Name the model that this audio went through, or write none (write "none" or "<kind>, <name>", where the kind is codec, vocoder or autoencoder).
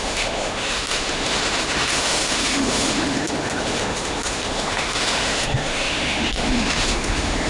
autoencoder, DAC-VAE